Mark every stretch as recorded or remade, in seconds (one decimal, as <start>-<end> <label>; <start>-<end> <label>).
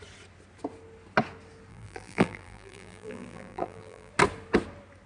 0.0-1.7 recorded; 1.7-4.1 remade; 4.1-5.1 recorded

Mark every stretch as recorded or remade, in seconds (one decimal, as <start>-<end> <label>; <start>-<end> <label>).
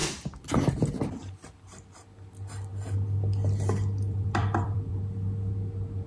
0.0-2.7 recorded; 2.7-5.0 remade; 5.0-6.1 recorded